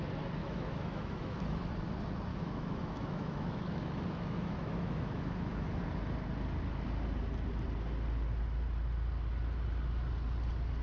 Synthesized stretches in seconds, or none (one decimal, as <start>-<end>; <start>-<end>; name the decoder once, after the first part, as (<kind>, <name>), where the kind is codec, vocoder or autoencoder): 0.4-1.7 (autoencoder, DAC-VAE); 2.3-5.8